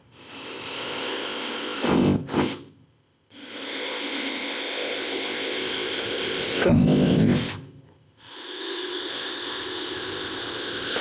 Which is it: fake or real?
fake